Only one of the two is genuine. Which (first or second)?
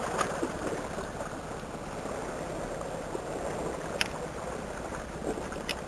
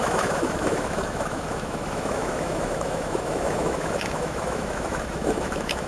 first